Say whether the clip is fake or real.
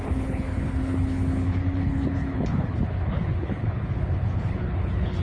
fake